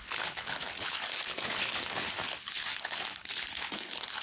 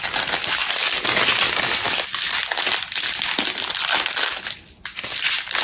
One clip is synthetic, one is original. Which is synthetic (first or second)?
first